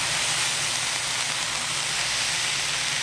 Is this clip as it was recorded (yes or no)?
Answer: yes